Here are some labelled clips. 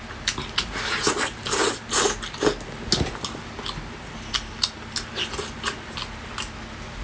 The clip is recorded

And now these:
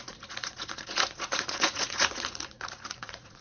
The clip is remade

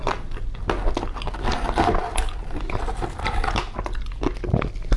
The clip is recorded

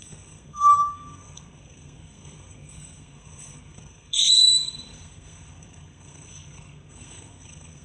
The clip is remade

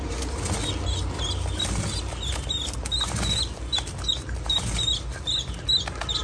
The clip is recorded